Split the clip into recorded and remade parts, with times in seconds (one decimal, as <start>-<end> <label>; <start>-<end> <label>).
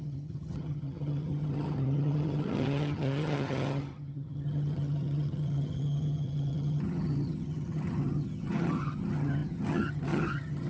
0.0-10.7 remade